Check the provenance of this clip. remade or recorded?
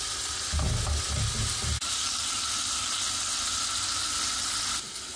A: recorded